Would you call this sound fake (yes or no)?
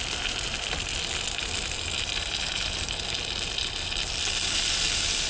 no